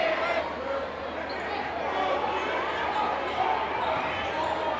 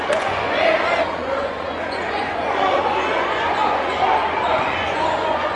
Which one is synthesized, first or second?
second